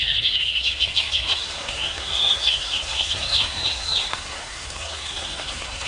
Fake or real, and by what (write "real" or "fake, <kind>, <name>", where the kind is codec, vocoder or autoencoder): fake, codec, SNAC